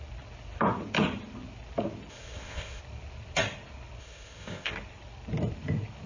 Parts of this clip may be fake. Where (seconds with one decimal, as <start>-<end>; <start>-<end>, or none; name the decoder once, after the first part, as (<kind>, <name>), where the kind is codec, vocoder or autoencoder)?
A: 2.1-2.8 (codec, ZipCodec); 4.0-4.7

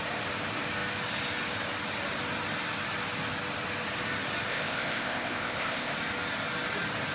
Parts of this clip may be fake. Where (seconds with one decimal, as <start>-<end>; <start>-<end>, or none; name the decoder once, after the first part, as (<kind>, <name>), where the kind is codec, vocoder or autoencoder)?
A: 4.5-5.9 (codec, ZipCodec)

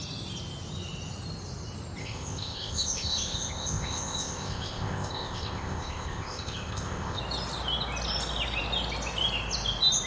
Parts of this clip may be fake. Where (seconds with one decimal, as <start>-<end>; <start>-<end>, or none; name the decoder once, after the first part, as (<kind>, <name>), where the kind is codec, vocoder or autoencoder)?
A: 2.0-7.2 (codec, ZipCodec)

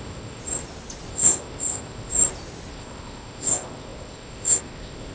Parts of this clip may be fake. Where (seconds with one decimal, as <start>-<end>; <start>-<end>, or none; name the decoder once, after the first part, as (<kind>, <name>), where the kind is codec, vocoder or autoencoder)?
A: 0.0-0.4 (codec, ZipCodec); 1.1-2.1; 2.7-5.1